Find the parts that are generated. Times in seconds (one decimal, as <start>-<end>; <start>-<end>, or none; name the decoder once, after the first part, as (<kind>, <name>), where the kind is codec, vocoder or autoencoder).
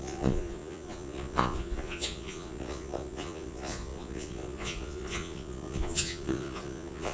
0.0-7.1 (vocoder, Vocos)